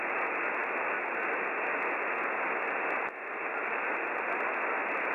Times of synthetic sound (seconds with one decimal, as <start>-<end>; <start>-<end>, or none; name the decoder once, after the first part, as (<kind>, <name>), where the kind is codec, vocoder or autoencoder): none